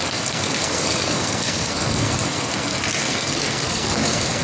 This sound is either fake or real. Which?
fake